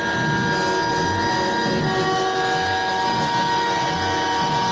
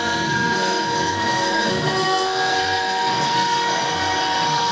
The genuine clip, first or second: first